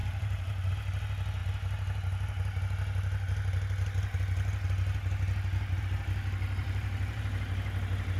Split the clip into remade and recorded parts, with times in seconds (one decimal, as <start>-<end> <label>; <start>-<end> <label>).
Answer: 0.0-0.7 remade; 0.7-6.6 recorded; 6.6-7.3 remade; 7.3-8.2 recorded